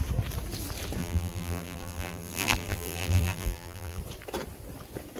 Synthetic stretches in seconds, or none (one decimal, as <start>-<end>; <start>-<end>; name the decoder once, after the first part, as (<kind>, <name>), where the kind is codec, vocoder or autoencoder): 1.0-4.0 (vocoder, BigVGAN v2)